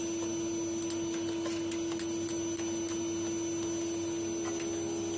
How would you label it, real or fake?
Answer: real